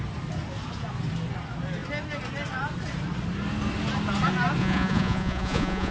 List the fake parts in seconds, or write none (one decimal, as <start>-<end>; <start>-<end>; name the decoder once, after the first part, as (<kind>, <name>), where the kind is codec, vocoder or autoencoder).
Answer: 4.6-5.9 (vocoder, Vocos)